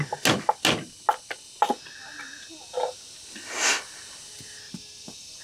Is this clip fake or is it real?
real